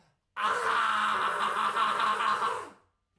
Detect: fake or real real